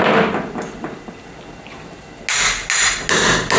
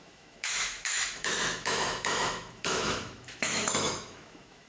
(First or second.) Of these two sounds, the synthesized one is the second